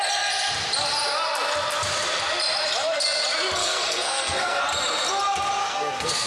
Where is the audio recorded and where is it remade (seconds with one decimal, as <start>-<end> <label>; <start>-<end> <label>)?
0.0-3.6 recorded; 3.6-4.6 remade; 4.6-5.6 recorded; 5.6-6.3 remade